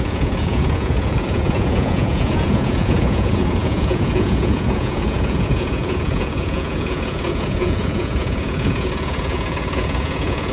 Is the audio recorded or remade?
remade